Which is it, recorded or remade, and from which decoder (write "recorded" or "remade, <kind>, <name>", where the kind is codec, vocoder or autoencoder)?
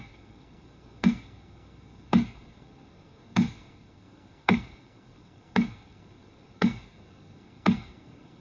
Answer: remade, codec, SNAC